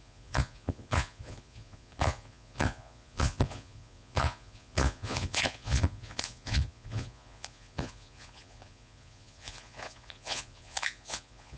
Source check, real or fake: fake